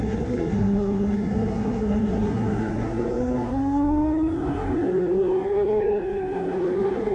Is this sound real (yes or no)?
no